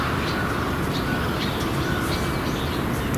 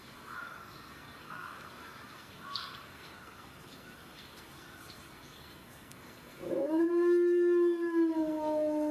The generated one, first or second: second